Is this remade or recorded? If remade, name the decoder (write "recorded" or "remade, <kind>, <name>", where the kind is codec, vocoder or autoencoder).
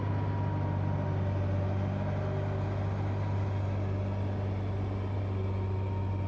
recorded